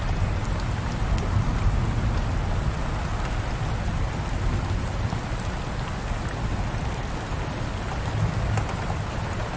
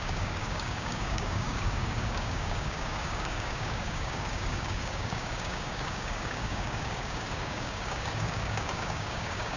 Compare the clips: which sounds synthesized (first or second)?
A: second